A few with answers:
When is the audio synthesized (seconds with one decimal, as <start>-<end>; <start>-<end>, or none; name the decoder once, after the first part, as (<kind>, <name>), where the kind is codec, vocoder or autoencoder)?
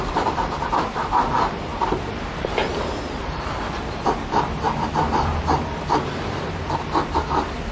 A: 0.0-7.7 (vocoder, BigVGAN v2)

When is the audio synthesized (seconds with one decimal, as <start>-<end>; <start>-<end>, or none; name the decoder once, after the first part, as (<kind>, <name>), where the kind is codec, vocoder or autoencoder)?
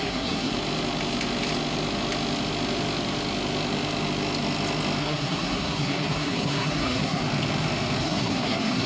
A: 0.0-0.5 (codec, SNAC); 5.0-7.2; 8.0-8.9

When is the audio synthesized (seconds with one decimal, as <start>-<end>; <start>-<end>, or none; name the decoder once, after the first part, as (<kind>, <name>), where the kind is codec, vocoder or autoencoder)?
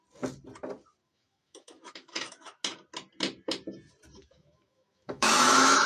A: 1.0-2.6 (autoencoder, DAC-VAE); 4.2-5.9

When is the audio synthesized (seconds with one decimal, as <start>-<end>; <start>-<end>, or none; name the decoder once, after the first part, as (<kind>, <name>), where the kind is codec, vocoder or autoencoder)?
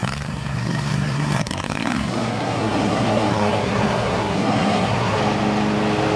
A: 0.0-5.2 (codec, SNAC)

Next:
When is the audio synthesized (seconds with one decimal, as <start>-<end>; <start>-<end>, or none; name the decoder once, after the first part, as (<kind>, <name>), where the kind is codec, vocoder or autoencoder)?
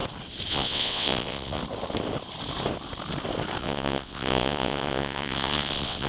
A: 0.5-1.6 (vocoder, WaveNeXt); 3.6-6.1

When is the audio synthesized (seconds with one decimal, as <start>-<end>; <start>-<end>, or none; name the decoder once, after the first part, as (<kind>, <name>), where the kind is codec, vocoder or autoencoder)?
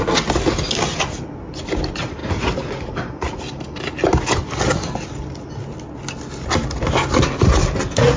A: none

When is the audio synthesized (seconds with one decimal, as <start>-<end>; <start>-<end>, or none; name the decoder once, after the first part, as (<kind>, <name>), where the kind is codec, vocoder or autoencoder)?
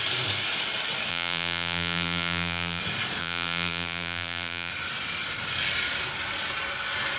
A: 1.1-2.8 (vocoder, BigVGAN v2); 3.2-4.7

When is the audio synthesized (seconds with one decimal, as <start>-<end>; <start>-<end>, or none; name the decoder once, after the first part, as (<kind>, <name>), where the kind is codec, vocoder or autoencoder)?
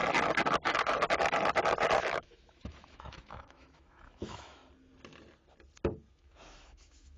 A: 2.0-4.6 (autoencoder, DAC-VAE); 6.1-7.2